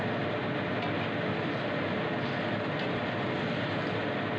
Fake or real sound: real